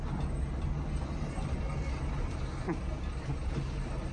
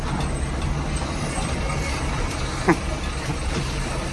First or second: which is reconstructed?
second